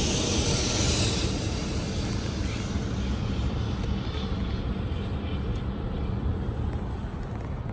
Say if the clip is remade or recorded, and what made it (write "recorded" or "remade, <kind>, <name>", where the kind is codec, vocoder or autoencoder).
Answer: recorded